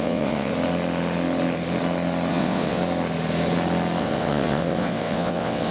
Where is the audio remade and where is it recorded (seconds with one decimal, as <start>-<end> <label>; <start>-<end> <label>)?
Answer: 0.0-0.5 remade; 0.5-2.3 recorded; 2.3-2.8 remade; 2.8-4.0 recorded; 4.0-5.7 remade